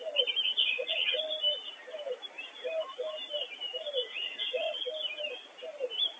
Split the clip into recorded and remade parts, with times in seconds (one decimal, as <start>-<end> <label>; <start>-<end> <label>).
0.0-0.6 recorded; 0.6-1.2 remade; 1.2-4.1 recorded; 4.1-4.8 remade; 4.8-6.2 recorded

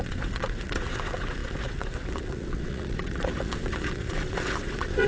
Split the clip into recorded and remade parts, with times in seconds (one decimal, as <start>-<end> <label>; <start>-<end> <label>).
0.0-5.1 remade

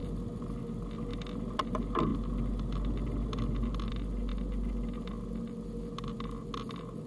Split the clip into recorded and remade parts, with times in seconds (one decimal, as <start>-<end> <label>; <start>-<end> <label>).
0.0-7.1 recorded

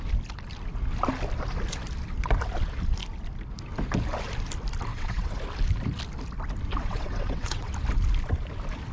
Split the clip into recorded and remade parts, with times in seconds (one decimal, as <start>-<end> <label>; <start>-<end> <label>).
0.0-4.9 recorded; 4.9-5.4 remade; 5.4-6.8 recorded; 6.8-7.7 remade; 7.7-8.9 recorded